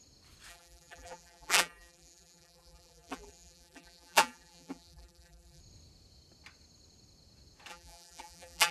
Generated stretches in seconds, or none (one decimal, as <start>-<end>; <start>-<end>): 0.5-5.6; 7.7-8.7